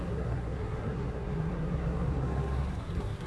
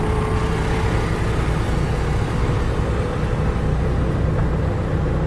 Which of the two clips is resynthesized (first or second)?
first